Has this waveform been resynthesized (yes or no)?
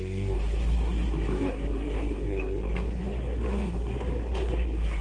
yes